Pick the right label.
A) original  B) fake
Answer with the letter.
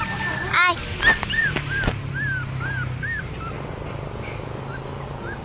A